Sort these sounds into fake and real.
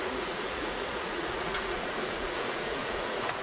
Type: fake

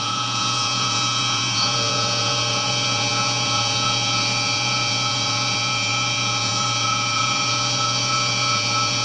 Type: fake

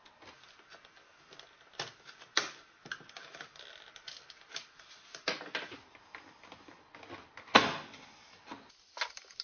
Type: real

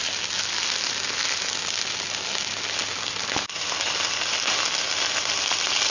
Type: real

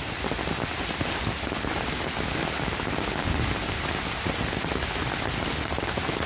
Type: real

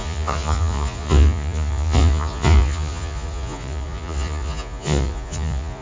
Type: fake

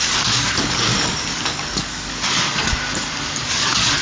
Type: fake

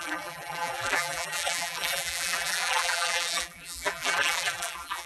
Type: fake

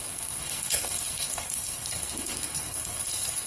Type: fake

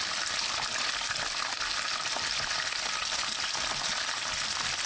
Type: real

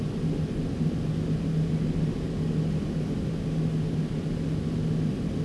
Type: real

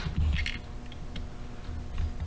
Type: real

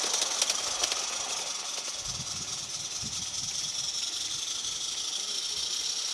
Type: real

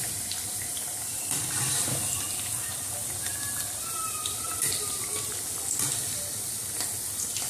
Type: real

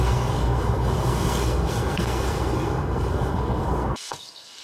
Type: fake